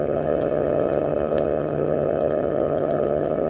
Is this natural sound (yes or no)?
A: no